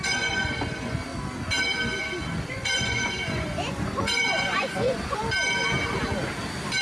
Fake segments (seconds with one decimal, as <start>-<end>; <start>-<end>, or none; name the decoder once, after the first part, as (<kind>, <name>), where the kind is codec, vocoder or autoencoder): 0.0-1.1 (vocoder, Vocos); 2.4-5.2